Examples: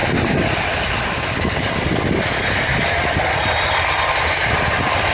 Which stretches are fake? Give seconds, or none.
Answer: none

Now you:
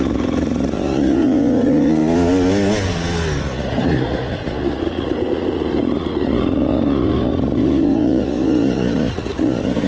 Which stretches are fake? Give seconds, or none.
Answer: 0.0-2.0; 3.4-9.9

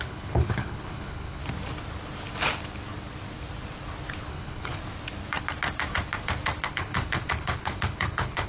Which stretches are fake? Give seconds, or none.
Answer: 0.0-1.4; 4.3-4.8; 6.7-8.5

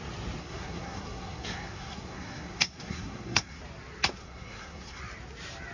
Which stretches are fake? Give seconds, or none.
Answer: 0.4-3.6; 4.2-5.0

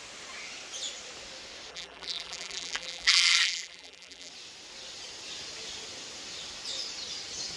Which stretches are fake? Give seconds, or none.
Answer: 1.7-4.3

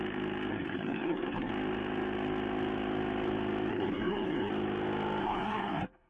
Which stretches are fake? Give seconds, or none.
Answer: 0.5-1.5; 3.7-4.5; 5.2-6.1

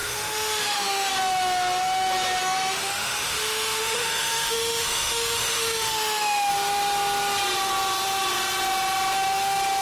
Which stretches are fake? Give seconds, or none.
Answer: 0.0-1.1; 2.4-6.5

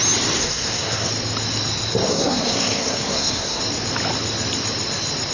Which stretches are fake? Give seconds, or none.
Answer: 0.4-1.1; 2.1-3.6